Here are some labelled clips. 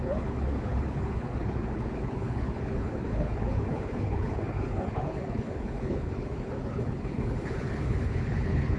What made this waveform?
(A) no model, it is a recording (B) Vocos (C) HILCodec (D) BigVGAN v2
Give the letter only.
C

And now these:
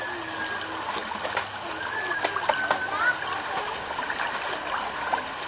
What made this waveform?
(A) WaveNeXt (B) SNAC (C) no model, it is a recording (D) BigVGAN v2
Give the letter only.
C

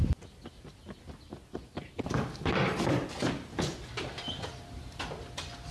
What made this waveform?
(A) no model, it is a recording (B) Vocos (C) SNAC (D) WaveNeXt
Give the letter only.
A